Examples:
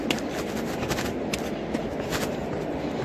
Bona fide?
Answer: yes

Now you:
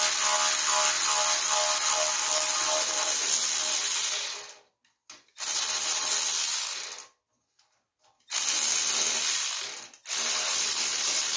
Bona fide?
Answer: yes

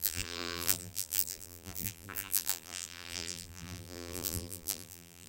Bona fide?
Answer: no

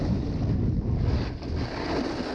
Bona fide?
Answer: yes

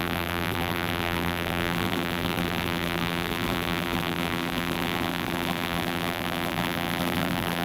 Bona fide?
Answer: no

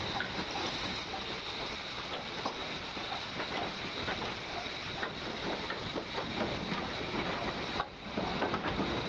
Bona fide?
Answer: yes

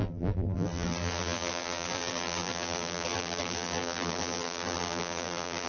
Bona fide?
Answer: no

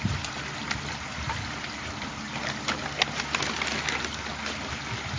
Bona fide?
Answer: yes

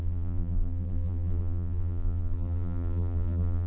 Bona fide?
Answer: no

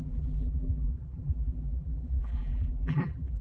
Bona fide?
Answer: no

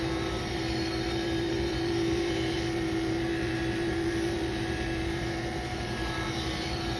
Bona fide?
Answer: no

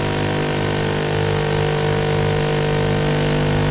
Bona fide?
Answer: no